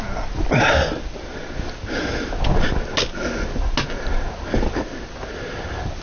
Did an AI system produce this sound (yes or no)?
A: no